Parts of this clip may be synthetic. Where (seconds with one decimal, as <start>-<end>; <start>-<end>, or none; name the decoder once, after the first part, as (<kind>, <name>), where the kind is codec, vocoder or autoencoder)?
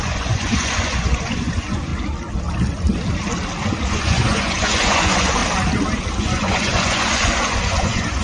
0.0-1.9 (vocoder, Vocos); 3.9-5.4; 6.2-8.2